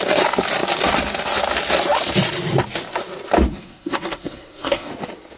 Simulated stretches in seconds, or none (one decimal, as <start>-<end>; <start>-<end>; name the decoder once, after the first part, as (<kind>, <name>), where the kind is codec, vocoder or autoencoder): 3.5-4.9 (codec, SNAC)